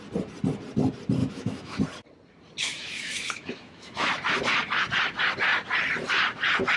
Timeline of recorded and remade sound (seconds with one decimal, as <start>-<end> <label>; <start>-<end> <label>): 0.0-1.2 recorded; 1.2-1.8 remade; 1.8-2.6 recorded; 2.6-4.1 remade; 4.1-6.8 recorded